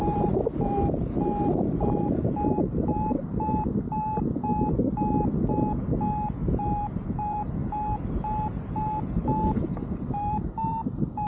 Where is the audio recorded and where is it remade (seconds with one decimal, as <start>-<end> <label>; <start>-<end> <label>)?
0.0-4.5 remade; 4.5-6.4 recorded; 6.4-7.6 remade; 7.6-9.9 recorded; 9.9-11.3 remade